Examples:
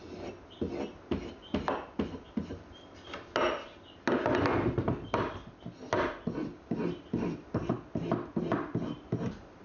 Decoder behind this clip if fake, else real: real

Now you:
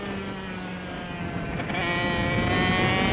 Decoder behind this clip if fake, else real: real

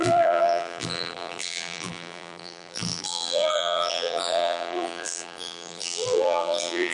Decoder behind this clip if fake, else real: fake, vocoder, BigVGAN v2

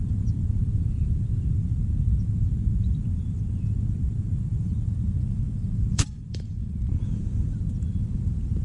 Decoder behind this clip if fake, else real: fake, vocoder, BigVGAN v2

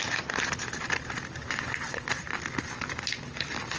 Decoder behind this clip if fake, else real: real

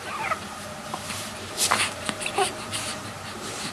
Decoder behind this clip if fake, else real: fake, vocoder, BigVGAN v2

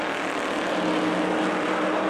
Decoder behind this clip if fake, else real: real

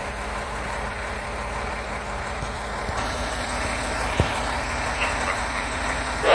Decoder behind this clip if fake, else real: fake, vocoder, BigVGAN v2